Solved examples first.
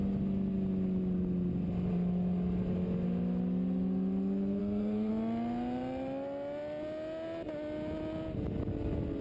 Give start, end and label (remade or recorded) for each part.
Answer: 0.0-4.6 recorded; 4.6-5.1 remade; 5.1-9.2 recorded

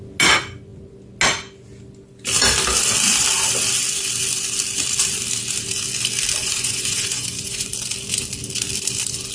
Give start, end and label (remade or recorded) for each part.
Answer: 0.0-6.4 recorded; 6.4-7.7 remade; 7.7-9.3 recorded

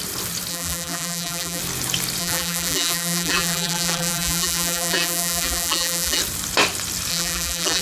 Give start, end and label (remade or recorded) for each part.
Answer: 0.0-0.5 recorded; 0.5-1.6 remade; 1.6-2.2 recorded; 2.2-6.2 remade; 6.2-7.1 recorded; 7.1-7.8 remade

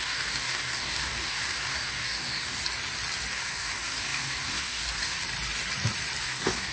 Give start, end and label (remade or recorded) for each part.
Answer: 0.0-2.6 remade; 2.6-3.3 recorded; 3.3-5.2 remade; 5.2-6.2 recorded; 6.2-6.7 remade